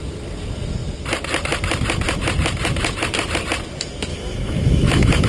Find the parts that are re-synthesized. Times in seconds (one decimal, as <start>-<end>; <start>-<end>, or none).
4.1-5.3